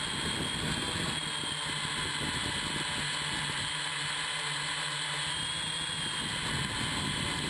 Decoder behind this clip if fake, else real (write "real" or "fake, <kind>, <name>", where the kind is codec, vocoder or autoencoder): real